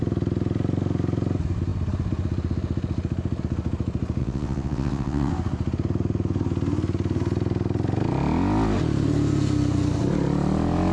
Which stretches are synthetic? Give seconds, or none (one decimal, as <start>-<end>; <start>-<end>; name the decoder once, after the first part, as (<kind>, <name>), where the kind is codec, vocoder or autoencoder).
4.2-5.3 (vocoder, WaveNeXt)